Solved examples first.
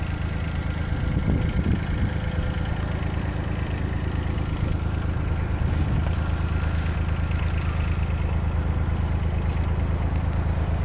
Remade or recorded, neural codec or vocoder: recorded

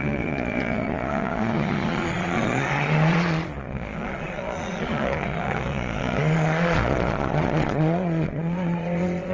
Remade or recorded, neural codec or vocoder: remade, vocoder, Vocos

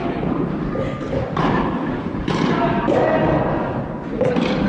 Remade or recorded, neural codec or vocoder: recorded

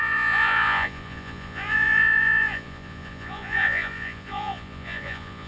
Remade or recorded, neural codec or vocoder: remade, vocoder, Vocos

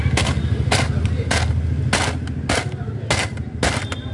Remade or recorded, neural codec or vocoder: recorded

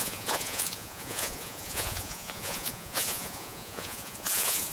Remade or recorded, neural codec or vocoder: remade, vocoder, Vocos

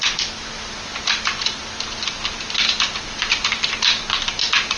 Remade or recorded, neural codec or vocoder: recorded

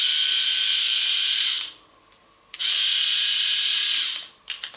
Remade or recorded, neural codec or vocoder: recorded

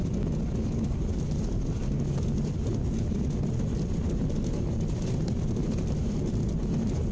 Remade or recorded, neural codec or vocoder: recorded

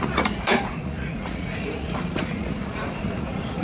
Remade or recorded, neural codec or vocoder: remade, vocoder, Vocos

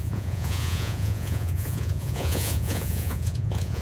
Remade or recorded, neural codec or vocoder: remade, vocoder, Vocos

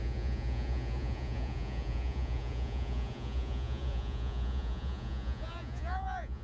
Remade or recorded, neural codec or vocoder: remade, vocoder, Vocos